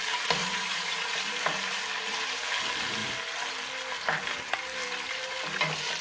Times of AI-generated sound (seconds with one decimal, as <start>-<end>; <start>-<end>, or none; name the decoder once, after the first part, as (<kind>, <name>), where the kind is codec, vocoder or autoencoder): 0.4-1.1 (vocoder, Vocos)